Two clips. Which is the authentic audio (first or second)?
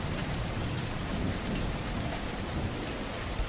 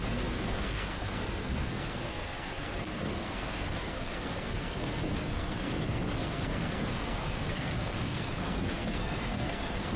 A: first